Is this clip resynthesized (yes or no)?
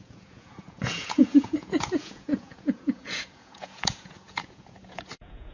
yes